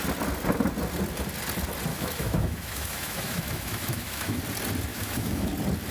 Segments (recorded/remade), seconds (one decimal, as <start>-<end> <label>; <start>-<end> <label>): 0.0-1.9 recorded; 1.9-4.4 remade; 4.4-4.9 recorded; 4.9-5.5 remade; 5.5-5.9 recorded